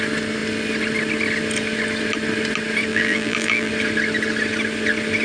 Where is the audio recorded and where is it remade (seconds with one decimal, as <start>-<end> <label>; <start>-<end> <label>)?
0.0-2.9 recorded; 2.9-3.7 remade; 3.7-5.2 recorded